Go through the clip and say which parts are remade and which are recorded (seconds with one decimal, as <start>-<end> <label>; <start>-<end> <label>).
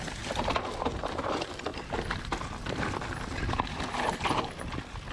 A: 0.0-5.1 recorded